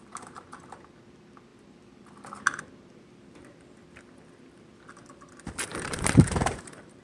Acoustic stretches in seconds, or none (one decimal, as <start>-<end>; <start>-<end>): 0.0-5.7